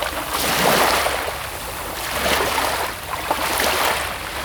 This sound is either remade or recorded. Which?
recorded